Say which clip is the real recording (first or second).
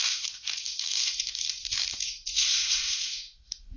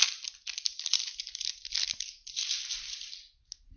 second